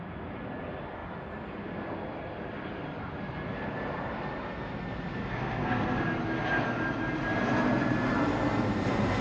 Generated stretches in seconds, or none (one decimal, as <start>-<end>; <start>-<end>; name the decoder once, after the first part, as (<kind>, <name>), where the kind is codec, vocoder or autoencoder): 5.2-6.0 (codec, SNAC)